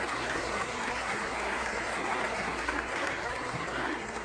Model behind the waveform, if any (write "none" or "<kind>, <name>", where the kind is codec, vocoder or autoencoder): codec, SNAC